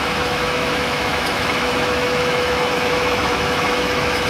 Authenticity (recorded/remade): remade